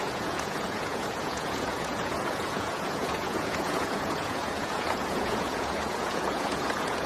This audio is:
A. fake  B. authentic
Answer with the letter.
A